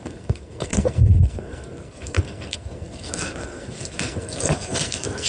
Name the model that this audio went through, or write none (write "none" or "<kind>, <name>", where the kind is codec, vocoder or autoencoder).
codec, SNAC